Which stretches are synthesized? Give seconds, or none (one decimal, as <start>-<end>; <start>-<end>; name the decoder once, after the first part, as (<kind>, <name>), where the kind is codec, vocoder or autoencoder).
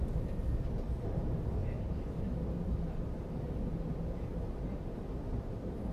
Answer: 1.6-3.7 (vocoder, BigVGAN v2)